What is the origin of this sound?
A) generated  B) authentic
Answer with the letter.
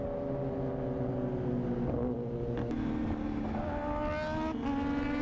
B